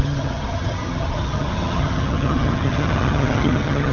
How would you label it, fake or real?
fake